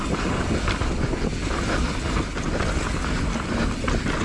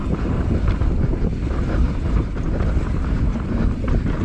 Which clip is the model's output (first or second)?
second